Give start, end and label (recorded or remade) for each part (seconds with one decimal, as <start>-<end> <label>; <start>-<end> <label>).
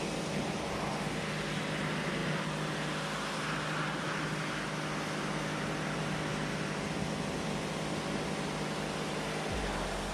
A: 0.0-10.1 recorded